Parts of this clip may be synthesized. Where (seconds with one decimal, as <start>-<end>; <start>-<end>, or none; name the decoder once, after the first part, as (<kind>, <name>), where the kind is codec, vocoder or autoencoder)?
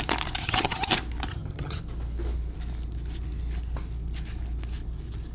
0.4-0.9 (vocoder, HiFi-GAN); 1.3-1.8